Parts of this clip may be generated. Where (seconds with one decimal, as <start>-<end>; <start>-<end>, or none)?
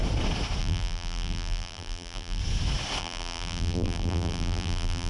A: 0.6-2.4; 3.0-5.1